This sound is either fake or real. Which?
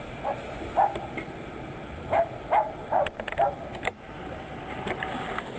real